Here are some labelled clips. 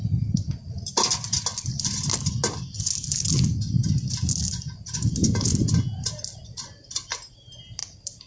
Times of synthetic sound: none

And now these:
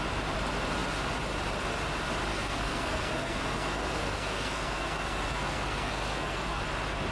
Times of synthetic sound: 2.3-6.6

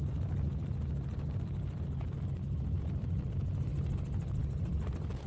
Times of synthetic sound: none

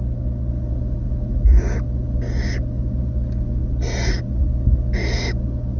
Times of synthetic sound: none

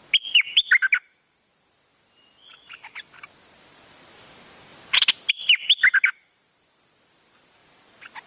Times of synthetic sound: none

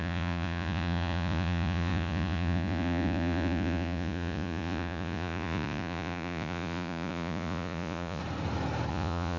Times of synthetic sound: 0.0-8.2; 8.9-9.4

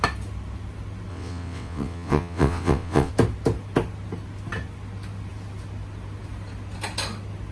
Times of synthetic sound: 1.1-3.1

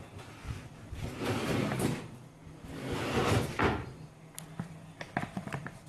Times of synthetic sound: none